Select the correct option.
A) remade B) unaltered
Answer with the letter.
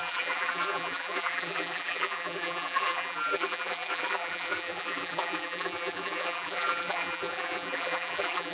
A